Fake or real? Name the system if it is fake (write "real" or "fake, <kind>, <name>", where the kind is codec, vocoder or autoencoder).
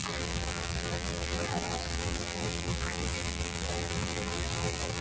fake, vocoder, BigVGAN v2